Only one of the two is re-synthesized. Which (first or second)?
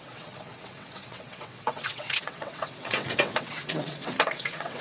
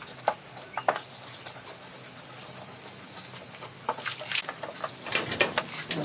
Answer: first